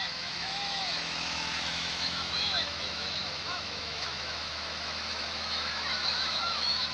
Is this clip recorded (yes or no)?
no